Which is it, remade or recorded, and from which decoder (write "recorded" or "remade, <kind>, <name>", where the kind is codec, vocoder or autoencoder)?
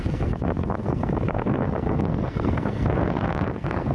remade, codec, SNAC